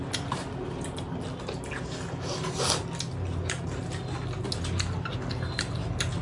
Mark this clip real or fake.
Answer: real